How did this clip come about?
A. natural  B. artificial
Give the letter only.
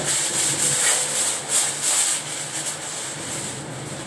A